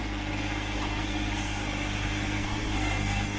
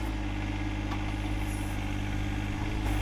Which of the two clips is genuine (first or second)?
second